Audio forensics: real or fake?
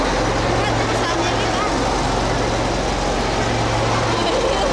real